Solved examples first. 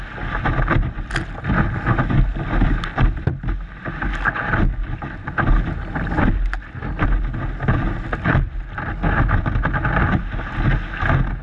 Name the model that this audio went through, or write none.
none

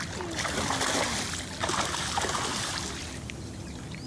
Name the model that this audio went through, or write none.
none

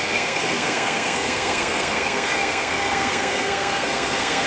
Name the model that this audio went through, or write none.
codec, SNAC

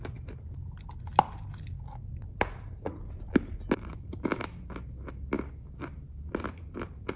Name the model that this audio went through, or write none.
none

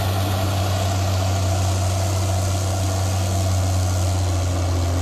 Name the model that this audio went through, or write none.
none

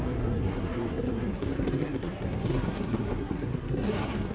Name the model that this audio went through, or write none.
codec, SNAC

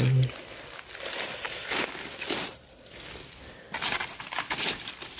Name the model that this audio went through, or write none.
none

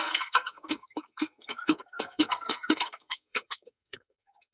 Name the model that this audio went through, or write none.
codec, SNAC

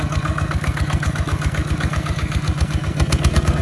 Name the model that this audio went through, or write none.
codec, SNAC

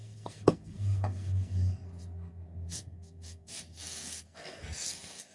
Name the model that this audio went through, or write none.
codec, SNAC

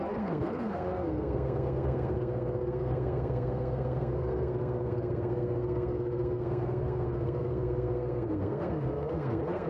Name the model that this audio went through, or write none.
codec, SNAC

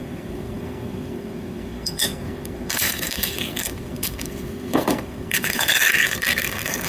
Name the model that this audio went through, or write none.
codec, SNAC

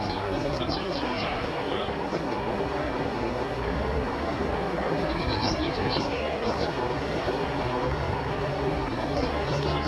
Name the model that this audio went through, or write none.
codec, SNAC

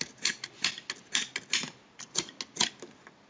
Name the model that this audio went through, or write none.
none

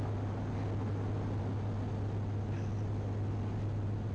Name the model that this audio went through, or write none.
none